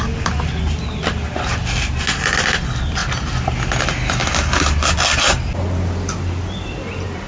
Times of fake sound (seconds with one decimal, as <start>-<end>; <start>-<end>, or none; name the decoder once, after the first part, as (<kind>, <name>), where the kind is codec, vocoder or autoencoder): none

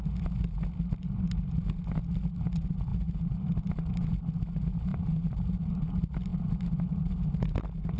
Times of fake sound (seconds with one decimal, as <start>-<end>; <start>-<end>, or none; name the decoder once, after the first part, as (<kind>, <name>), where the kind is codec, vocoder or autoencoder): 4.9-5.7 (vocoder, BigVGAN v2)

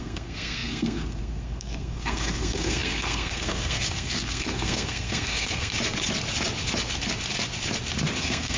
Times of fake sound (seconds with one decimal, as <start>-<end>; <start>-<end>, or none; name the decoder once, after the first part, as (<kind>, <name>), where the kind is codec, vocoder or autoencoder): 0.0-5.7 (codec, SNAC); 8.2-8.6

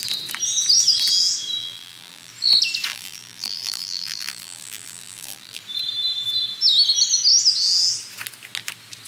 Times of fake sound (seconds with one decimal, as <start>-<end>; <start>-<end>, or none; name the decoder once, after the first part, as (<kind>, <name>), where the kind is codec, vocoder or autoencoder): 1.6-2.3 (vocoder, BigVGAN v2); 2.9-5.6

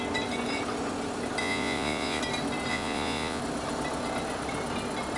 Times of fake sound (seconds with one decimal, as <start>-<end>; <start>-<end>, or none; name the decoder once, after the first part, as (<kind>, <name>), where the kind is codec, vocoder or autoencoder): 1.4-2.2 (vocoder, Vocos); 2.7-3.4